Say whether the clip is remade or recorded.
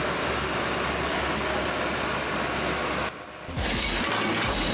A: recorded